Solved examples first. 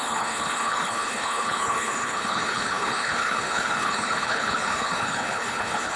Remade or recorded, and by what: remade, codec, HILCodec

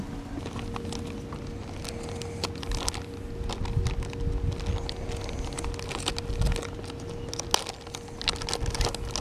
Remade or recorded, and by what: recorded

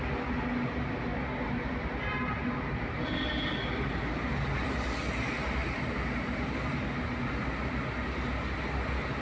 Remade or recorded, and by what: recorded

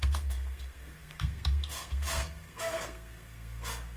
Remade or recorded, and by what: remade, codec, SNAC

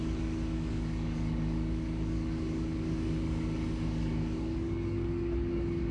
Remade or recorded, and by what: remade, codec, DAC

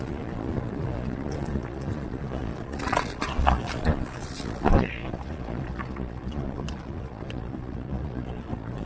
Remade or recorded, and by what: remade, vocoder, Vocos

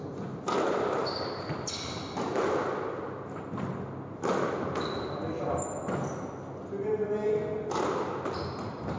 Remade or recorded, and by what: recorded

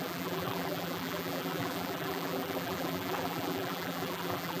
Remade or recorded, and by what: remade, vocoder, BigVGAN v2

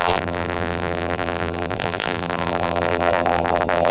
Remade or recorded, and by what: remade, vocoder, BigVGAN v2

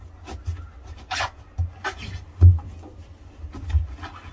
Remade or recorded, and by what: recorded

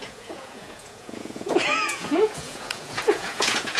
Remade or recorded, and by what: remade, vocoder, Vocos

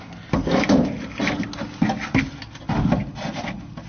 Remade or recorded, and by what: recorded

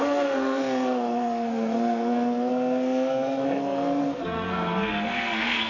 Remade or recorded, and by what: remade, codec, SNAC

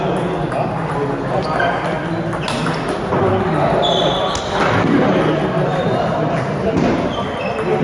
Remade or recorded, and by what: recorded